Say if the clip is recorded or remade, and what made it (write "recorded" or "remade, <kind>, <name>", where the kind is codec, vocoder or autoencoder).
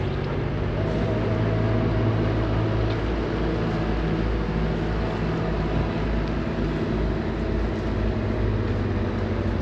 recorded